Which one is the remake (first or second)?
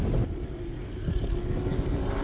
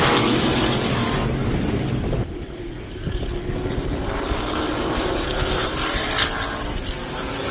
second